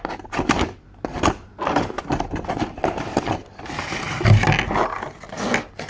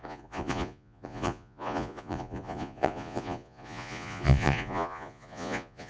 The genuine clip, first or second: first